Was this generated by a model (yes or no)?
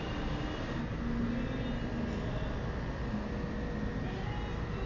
no